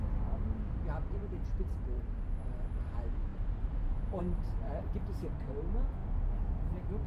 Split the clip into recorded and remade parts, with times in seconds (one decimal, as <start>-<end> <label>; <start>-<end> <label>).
0.0-1.2 recorded; 1.2-2.4 remade; 2.4-3.3 recorded; 3.3-4.2 remade; 4.2-7.1 recorded

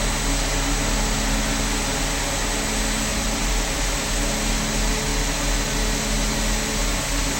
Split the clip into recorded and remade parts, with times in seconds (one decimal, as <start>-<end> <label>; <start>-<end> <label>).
0.0-3.1 recorded; 3.1-3.8 remade; 3.8-7.4 recorded

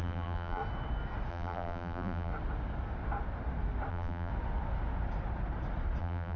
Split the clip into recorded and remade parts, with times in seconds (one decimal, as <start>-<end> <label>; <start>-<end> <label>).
0.0-0.6 remade; 0.6-1.3 recorded; 1.3-2.3 remade; 2.3-3.9 recorded; 3.9-4.3 remade; 4.3-6.0 recorded; 6.0-6.4 remade

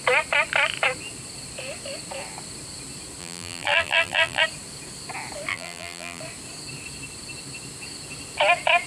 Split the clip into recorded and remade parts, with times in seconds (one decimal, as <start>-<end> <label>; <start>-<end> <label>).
0.0-3.2 recorded; 3.2-4.4 remade; 4.4-5.5 recorded; 5.5-6.2 remade; 6.2-8.9 recorded

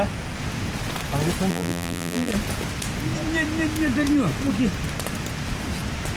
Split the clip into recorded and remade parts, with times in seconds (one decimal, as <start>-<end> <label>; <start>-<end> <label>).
0.0-1.5 recorded; 1.5-2.3 remade; 2.3-6.2 recorded